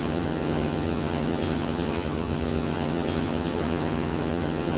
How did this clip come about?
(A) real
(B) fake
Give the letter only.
B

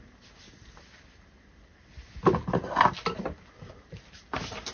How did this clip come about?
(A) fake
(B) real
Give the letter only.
B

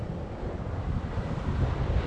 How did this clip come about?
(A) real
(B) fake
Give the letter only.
A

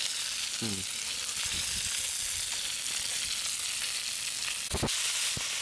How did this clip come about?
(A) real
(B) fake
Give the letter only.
A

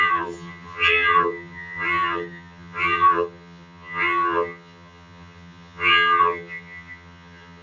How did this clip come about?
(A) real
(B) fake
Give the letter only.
B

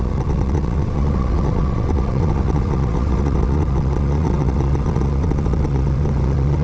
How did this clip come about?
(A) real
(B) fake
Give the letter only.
B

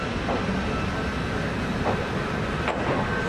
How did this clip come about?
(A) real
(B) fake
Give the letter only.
A